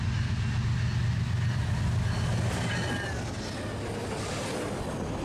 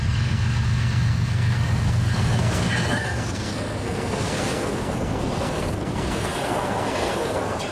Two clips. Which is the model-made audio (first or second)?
second